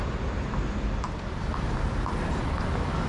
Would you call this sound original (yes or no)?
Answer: yes